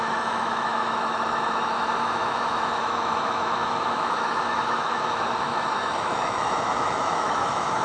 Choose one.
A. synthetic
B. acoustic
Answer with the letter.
A